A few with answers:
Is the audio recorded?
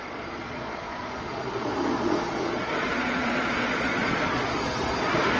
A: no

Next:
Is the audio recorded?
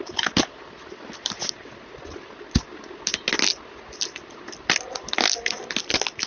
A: yes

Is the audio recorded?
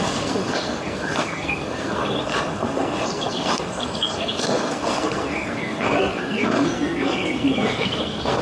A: no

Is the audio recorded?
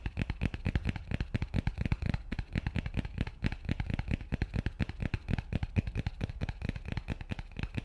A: yes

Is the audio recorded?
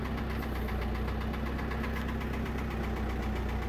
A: yes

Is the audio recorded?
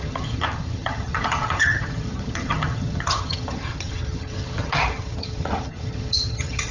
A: no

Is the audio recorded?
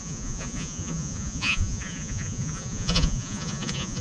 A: no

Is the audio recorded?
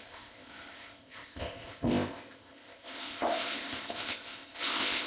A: no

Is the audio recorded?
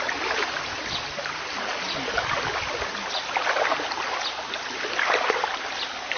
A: yes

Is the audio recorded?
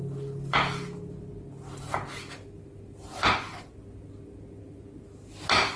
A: yes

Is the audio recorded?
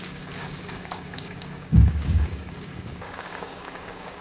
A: no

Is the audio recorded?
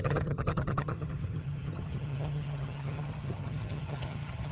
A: no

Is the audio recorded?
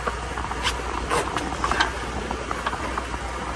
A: yes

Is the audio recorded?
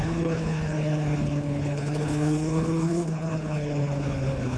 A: no